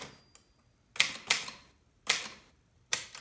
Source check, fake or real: real